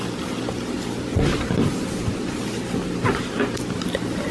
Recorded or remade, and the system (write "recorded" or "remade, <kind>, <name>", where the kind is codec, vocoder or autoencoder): recorded